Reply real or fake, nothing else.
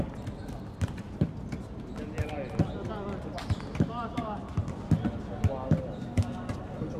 real